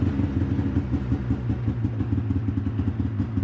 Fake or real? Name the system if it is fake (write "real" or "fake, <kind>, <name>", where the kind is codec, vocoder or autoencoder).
real